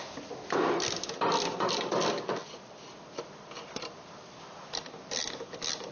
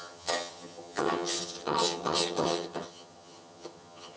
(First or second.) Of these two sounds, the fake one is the second